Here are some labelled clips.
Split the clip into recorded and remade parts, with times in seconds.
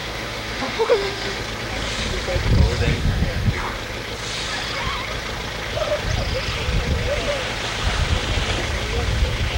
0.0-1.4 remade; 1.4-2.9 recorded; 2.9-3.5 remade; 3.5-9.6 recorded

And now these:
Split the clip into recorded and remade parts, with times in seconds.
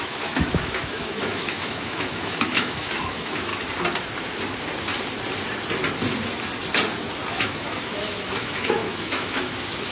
0.0-3.5 remade; 3.5-7.3 recorded; 7.3-9.9 remade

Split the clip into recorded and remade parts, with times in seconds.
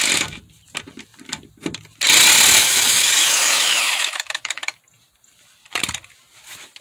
0.0-2.6 recorded; 2.6-4.8 remade; 4.8-6.8 recorded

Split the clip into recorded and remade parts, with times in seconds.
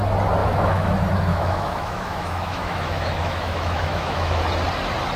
0.0-0.4 recorded; 0.4-0.9 remade; 0.9-1.3 recorded; 1.3-4.4 remade; 4.4-5.2 recorded